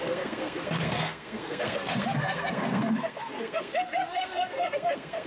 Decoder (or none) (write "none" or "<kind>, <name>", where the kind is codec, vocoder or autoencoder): codec, SNAC